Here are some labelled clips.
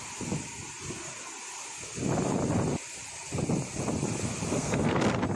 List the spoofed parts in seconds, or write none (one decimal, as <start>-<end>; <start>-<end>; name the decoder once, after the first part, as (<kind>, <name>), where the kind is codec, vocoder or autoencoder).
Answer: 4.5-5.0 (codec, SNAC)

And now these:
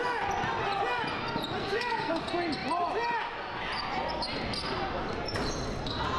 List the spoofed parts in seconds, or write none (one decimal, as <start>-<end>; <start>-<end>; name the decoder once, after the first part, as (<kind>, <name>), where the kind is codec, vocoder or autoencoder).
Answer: 1.6-2.2 (codec, SNAC)

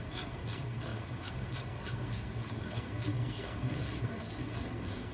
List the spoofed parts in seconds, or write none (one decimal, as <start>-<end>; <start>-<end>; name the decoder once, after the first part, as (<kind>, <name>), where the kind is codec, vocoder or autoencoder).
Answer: 0.0-5.1 (codec, SNAC)